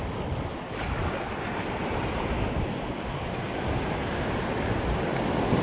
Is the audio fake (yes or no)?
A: no